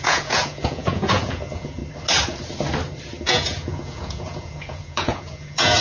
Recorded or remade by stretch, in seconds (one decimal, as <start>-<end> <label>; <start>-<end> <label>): 0.0-1.8 remade; 1.8-3.2 recorded; 3.2-5.8 remade